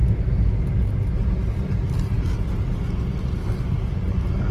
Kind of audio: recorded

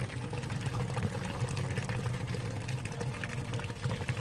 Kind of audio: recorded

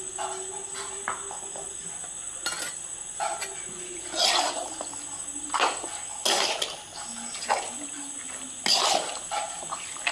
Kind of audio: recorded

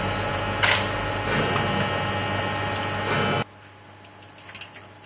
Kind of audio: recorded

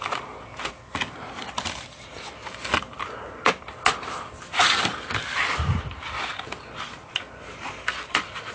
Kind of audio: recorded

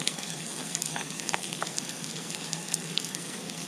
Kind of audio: remade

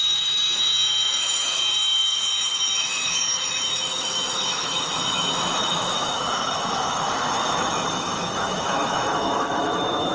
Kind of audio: remade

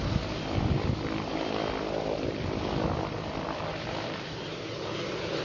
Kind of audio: recorded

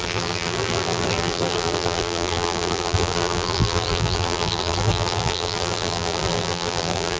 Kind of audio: remade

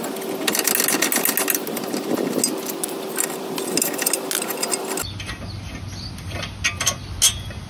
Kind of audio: recorded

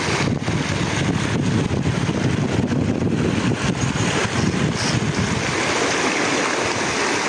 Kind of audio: recorded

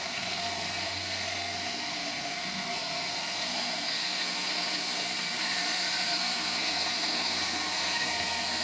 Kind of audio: remade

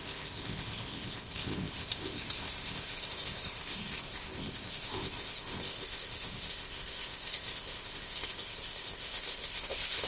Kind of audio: remade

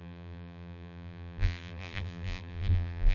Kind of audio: remade